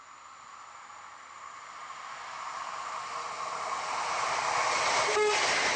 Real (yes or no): yes